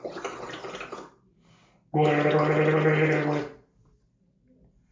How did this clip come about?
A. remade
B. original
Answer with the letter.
B